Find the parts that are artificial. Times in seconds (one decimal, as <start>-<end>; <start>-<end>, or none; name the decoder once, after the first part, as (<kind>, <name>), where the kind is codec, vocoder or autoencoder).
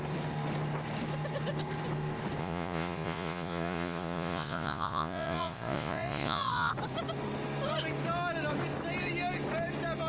2.4-6.7 (vocoder, Vocos)